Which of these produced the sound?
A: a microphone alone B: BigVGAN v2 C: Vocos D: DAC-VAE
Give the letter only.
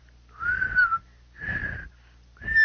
A